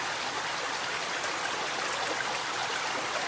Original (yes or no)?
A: yes